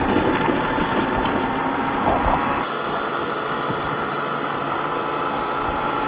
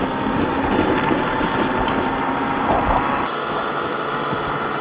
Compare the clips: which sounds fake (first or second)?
first